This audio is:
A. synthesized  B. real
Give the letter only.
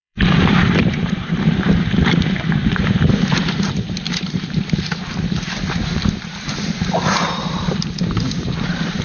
A